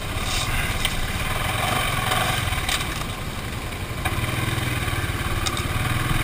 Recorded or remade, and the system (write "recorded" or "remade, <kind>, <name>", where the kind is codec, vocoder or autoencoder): recorded